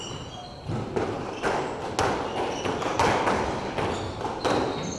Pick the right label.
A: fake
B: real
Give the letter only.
B